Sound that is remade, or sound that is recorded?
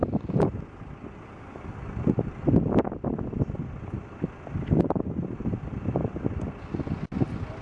recorded